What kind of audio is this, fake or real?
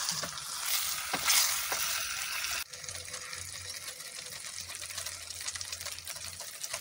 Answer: real